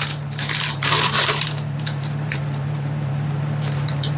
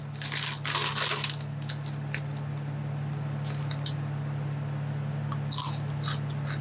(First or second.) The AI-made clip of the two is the first